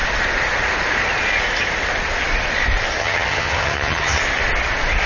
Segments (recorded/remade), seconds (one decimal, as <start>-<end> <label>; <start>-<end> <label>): 0.0-3.0 recorded; 3.0-4.2 remade; 4.2-5.1 recorded